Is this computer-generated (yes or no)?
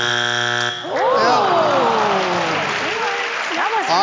no